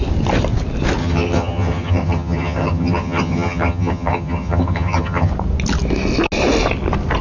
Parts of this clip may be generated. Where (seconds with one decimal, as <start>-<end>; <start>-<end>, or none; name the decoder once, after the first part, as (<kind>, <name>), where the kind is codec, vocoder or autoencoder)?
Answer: 1.0-5.3 (vocoder, HiFi-GAN)